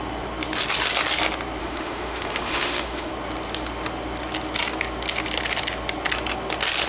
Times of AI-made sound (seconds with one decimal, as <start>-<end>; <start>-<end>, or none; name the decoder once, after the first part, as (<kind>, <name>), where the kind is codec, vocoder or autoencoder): 1.6-3.1 (autoencoder, DAC-VAE)